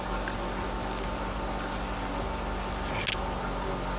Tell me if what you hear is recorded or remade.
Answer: recorded